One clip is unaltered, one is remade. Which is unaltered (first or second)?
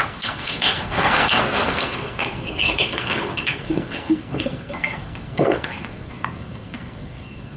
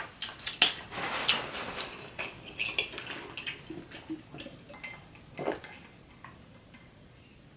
second